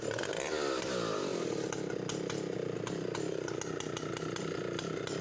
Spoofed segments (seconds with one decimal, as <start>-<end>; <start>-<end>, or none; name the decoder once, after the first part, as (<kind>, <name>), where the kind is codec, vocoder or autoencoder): none